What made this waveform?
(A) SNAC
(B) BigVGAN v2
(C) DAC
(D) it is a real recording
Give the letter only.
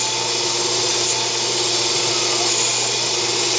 D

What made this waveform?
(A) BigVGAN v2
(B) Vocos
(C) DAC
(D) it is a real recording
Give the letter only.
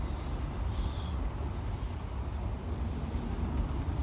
D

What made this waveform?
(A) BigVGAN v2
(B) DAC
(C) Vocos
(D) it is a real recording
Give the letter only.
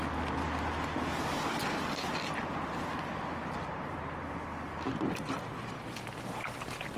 A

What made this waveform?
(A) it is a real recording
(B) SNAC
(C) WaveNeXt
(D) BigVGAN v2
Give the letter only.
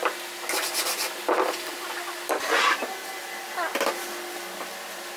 A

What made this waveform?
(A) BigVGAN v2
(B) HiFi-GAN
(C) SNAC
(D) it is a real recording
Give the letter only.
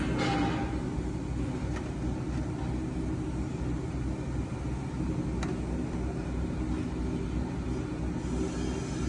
D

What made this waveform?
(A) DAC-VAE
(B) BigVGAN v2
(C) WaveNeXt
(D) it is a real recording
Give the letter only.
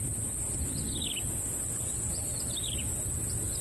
D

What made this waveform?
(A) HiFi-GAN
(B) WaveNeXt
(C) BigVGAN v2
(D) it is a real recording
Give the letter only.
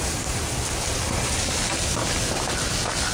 D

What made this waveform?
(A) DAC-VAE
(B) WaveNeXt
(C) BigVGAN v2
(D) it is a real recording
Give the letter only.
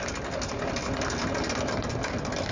D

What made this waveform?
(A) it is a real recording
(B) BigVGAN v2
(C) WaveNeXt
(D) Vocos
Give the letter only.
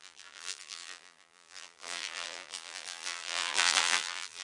B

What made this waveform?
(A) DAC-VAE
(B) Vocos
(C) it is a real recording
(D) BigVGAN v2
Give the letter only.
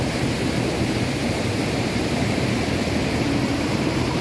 D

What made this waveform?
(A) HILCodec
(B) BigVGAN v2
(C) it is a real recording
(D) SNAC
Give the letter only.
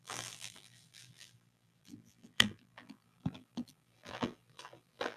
B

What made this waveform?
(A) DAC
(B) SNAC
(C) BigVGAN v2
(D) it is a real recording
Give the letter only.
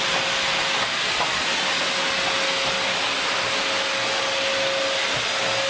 D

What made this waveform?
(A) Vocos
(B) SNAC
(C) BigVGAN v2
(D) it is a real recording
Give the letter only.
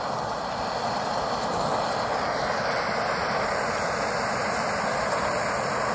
D